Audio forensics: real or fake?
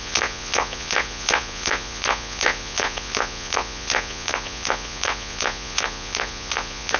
fake